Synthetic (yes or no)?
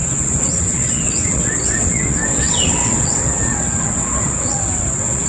yes